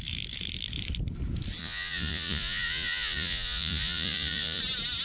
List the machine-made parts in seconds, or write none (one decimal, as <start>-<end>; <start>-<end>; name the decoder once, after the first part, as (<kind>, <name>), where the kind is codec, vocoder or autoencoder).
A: 1.6-4.6 (vocoder, Vocos)